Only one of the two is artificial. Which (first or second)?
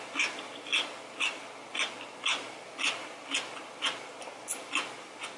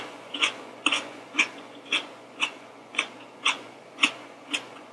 second